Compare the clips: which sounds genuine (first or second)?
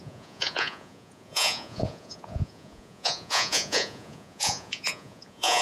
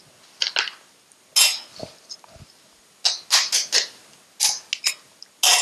second